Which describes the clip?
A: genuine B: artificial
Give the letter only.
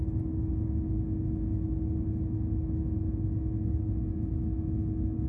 A